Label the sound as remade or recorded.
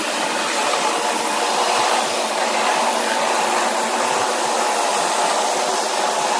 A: recorded